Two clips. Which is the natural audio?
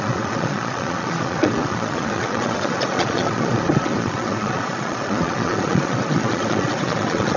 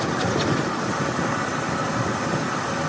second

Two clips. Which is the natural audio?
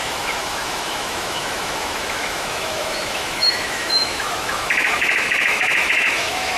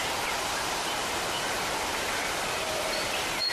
second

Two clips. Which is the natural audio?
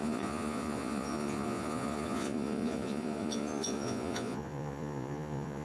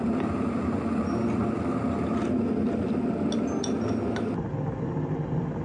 second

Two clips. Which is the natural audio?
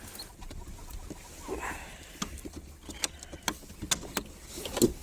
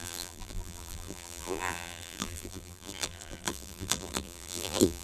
first